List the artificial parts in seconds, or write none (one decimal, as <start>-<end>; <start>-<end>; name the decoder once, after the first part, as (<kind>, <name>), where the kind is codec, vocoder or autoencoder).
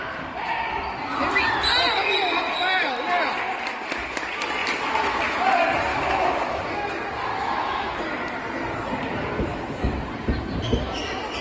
5.9-6.6 (autoencoder, DAC-VAE); 7.3-8.0